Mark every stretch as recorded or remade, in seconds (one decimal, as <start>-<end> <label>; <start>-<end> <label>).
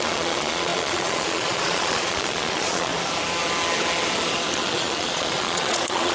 0.0-2.9 remade; 2.9-4.5 recorded; 4.5-6.1 remade